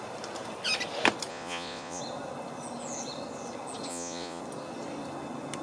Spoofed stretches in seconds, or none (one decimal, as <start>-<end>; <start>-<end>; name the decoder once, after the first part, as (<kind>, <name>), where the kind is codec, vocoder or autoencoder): 1.3-2.0 (vocoder, Vocos); 3.9-4.4